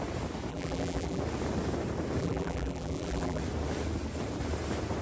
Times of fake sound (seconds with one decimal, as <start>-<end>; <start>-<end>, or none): 0.5-1.2; 2.2-3.4